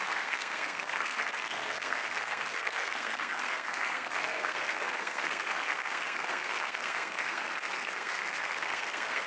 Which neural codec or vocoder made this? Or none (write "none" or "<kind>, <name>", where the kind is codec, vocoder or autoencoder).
codec, SNAC